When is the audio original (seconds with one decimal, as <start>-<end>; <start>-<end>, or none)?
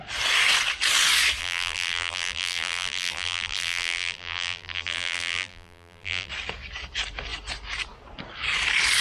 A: 0.0-1.4; 6.3-9.0